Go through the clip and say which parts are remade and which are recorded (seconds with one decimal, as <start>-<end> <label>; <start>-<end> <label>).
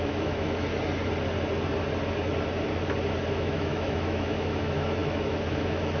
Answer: 0.0-0.7 remade; 0.7-3.3 recorded; 3.3-6.0 remade